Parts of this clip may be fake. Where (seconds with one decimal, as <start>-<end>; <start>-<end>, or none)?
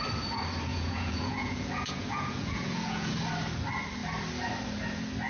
0.7-3.1